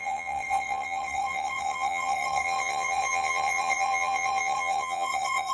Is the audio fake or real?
fake